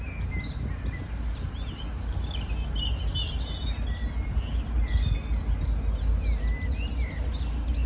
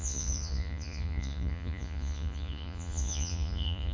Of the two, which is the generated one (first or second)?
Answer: second